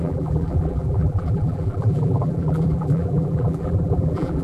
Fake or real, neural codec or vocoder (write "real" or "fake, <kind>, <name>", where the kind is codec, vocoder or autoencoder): fake, vocoder, BigVGAN v2